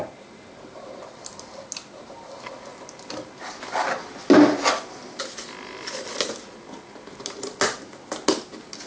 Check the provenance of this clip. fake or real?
real